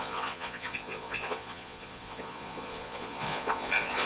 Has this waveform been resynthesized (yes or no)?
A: yes